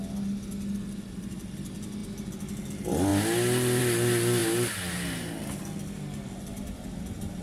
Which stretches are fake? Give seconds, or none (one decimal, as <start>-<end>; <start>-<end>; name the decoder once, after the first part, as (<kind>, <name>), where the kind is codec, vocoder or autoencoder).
none